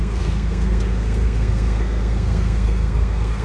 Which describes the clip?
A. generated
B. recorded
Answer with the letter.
A